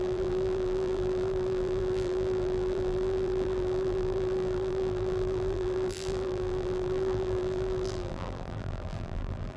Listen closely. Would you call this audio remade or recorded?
remade